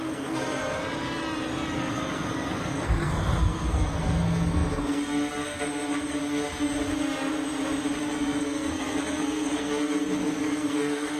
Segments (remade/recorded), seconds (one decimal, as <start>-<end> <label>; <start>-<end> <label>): 0.0-0.6 remade; 0.6-1.8 recorded; 1.8-6.5 remade; 6.5-8.1 recorded; 8.1-11.2 remade